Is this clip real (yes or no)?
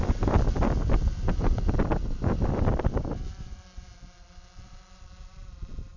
yes